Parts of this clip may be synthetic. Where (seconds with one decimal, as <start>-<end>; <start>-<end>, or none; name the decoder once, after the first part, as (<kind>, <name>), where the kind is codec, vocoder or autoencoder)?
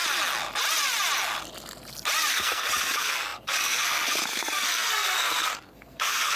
2.3-6.4 (codec, SNAC)